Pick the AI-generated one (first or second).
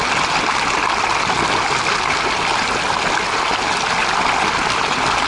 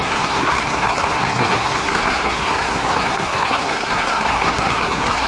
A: second